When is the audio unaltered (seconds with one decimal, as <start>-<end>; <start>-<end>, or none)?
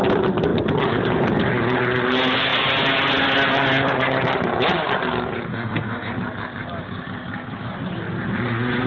0.0-5.5; 6.1-8.9